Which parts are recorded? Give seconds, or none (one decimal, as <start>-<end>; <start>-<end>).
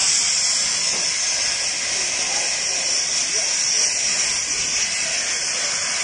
0.0-6.0